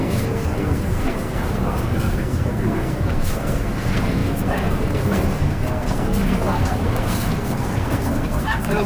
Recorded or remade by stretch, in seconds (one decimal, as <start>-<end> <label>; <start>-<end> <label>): 0.0-8.9 remade